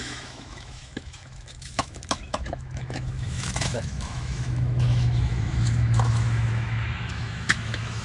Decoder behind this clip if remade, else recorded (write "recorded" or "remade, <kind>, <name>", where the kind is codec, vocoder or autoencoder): remade, autoencoder, DAC-VAE